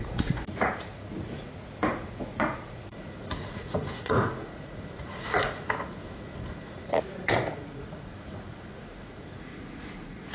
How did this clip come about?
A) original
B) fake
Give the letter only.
B